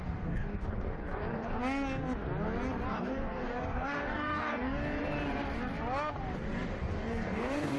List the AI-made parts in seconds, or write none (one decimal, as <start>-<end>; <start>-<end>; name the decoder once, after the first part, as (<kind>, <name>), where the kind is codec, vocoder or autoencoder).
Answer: 0.0-1.6 (codec, DAC); 2.9-4.8; 6.8-7.8